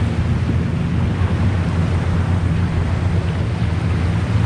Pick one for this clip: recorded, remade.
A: recorded